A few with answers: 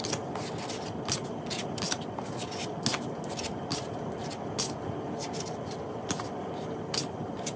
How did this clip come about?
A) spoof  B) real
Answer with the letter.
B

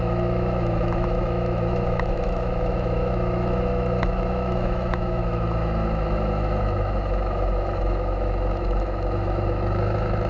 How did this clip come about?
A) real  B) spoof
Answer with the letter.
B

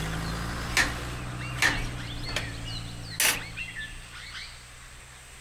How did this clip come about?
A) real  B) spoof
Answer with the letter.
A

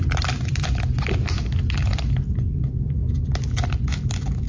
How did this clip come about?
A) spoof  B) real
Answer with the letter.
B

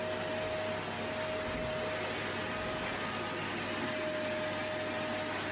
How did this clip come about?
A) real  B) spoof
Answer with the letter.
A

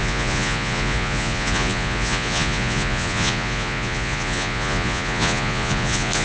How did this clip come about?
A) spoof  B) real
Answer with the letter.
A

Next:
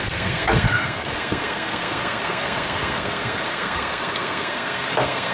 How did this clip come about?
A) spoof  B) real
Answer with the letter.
A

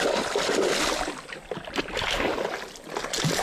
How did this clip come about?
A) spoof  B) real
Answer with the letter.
B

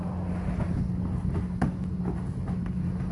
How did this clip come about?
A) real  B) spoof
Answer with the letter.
A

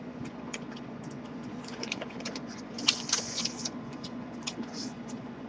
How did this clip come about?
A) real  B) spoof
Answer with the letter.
B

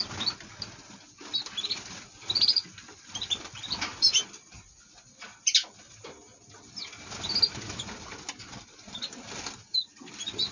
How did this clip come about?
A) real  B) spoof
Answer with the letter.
A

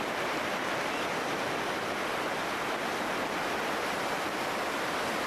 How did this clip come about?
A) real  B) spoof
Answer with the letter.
A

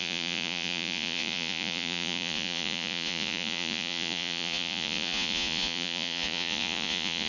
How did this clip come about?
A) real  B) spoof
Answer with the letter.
B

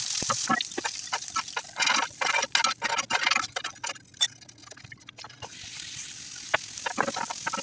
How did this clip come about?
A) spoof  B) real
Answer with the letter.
B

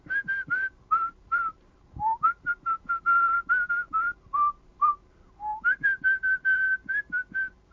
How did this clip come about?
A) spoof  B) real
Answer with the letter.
A